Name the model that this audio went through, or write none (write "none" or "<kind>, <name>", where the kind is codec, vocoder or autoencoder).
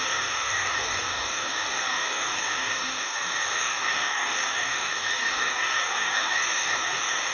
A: codec, DAC